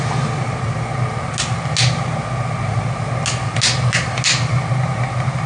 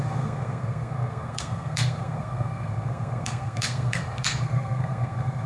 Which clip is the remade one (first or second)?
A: second